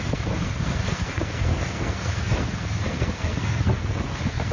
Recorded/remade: remade